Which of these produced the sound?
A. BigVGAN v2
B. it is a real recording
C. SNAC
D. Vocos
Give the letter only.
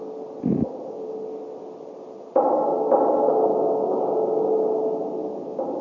B